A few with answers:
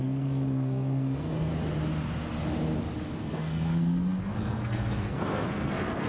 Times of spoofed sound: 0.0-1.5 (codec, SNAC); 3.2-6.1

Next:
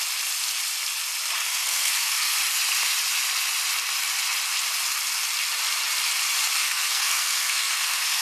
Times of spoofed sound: 1.4-2.4 (codec, SNAC); 6.6-8.2

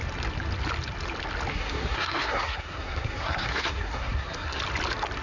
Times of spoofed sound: 1.5-4.6 (codec, SNAC)

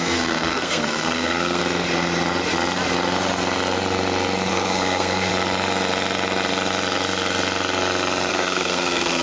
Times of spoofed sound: 0.0-1.6 (codec, SNAC); 4.5-5.3; 8.3-9.2

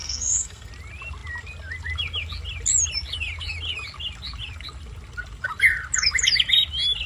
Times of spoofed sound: 0.0-0.7 (codec, SNAC)

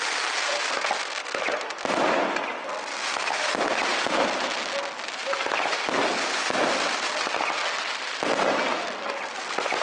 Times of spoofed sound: none

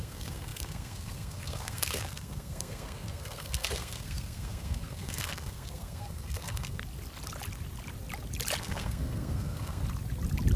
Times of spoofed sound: 0.0-6.8 (codec, SNAC); 8.6-9.8

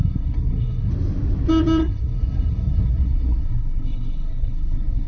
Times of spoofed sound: 0.0-0.9 (codec, SNAC); 1.8-5.1